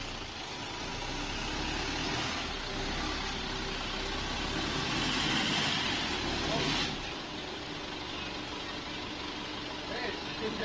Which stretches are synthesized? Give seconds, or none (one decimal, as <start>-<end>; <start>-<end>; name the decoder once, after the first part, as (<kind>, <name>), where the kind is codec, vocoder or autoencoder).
none